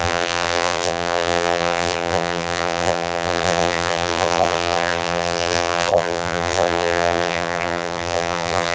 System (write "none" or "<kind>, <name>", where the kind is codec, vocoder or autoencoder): vocoder, BigVGAN v2